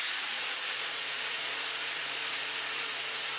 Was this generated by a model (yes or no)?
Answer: yes